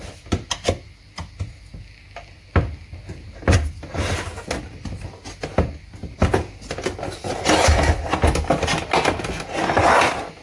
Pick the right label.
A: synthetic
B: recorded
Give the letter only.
B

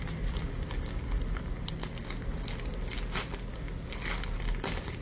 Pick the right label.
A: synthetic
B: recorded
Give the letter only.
B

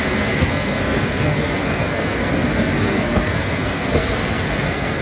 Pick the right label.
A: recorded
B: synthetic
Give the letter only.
B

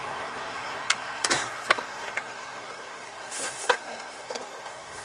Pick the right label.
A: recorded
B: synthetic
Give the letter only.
B